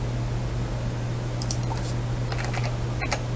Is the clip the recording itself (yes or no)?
yes